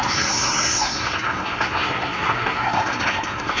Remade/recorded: remade